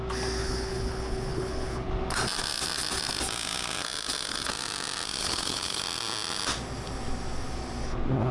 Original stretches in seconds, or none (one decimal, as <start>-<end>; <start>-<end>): 0.0-0.4; 1.9-5.2; 5.8-8.3